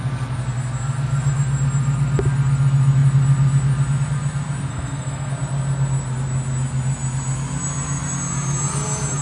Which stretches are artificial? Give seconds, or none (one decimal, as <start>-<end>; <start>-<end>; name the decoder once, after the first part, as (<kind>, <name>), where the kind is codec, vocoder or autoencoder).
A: 4.7-5.3 (codec, SNAC)